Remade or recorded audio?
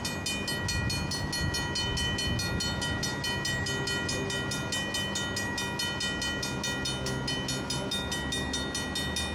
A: recorded